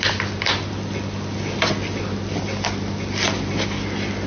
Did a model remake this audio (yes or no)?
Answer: no